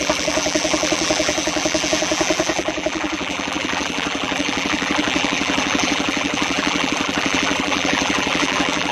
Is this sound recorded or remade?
remade